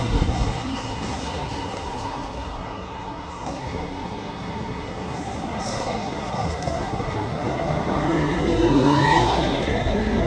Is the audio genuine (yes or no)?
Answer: no